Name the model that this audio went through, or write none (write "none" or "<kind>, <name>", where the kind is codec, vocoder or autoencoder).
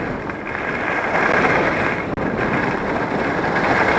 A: none